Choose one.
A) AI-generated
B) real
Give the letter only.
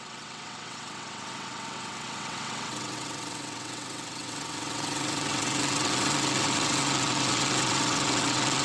A